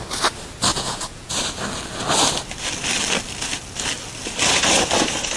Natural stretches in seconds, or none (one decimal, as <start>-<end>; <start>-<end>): 0.0-0.7; 1.3-5.4